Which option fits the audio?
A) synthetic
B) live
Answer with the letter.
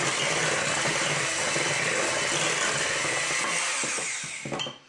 B